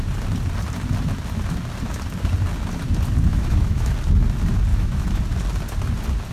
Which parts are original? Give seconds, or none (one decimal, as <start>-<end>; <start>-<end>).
0.0-3.3; 3.9-4.7; 5.2-6.3